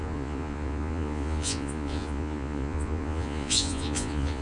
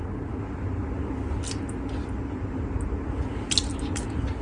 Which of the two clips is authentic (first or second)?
second